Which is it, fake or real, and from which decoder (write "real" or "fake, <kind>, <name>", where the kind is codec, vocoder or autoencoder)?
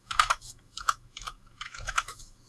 fake, autoencoder, DAC-VAE